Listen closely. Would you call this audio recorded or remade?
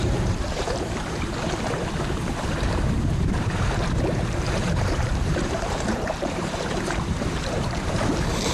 remade